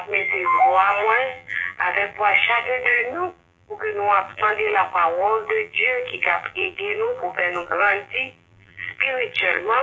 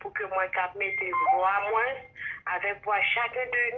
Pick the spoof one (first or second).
first